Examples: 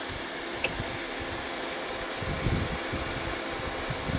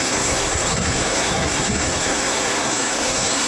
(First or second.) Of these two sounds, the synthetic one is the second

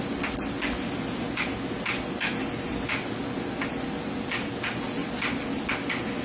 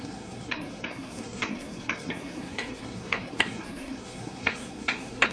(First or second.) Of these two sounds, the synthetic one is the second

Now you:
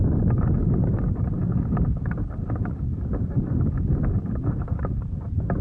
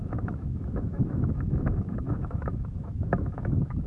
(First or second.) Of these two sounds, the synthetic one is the second